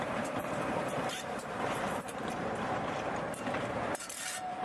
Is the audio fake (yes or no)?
yes